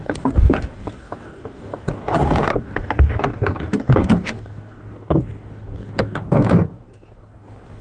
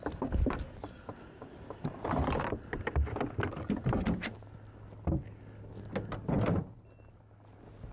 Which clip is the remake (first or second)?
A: first